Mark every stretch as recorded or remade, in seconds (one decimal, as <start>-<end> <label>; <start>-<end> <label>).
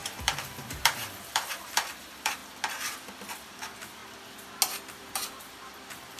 0.0-2.4 remade; 2.4-3.5 recorded; 3.5-4.0 remade; 4.0-4.9 recorded; 4.9-6.2 remade